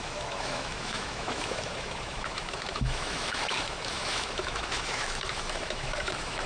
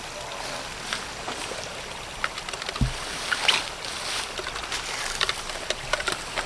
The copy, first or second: first